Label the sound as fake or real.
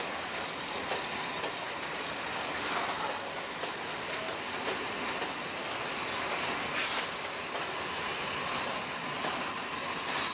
real